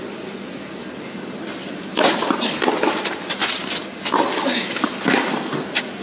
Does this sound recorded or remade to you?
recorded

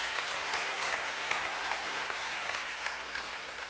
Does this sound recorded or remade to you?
remade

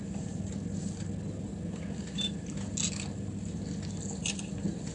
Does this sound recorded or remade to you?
recorded